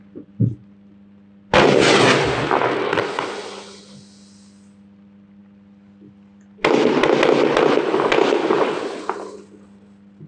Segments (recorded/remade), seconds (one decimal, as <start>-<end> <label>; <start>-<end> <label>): 0.0-10.3 recorded